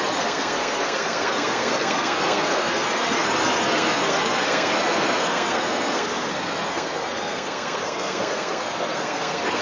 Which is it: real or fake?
fake